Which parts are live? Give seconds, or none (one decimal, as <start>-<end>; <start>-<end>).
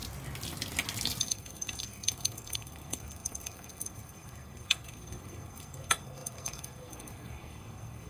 0.0-1.2